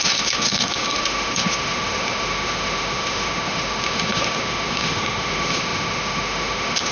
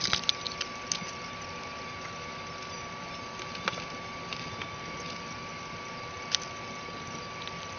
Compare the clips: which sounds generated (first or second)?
first